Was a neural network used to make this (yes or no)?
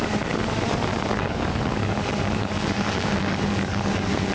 yes